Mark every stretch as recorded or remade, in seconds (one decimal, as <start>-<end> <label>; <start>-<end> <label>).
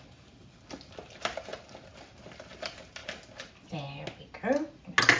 0.0-5.2 recorded